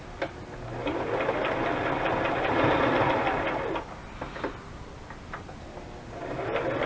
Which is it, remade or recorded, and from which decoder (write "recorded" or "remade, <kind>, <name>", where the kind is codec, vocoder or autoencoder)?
recorded